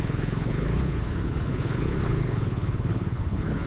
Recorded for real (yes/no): no